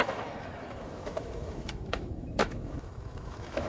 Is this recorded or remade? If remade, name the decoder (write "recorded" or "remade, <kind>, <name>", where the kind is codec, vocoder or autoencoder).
remade, autoencoder, DAC-VAE